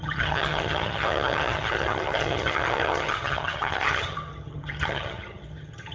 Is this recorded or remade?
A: remade